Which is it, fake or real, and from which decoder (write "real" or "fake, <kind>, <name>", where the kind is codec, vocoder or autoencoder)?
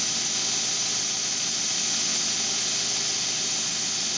real